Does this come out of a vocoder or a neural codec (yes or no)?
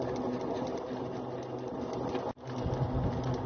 no